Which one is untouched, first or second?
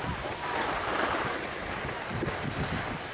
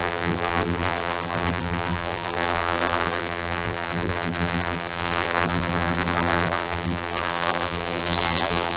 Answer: first